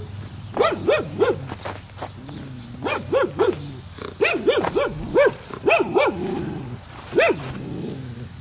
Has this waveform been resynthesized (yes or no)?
no